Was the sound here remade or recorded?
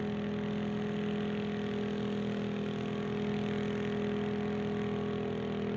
recorded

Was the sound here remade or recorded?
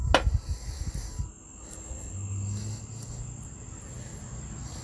recorded